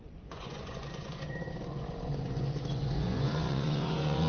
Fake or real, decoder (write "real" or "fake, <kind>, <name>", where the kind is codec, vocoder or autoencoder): fake, vocoder, Vocos